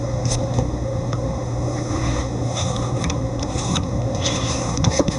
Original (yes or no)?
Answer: no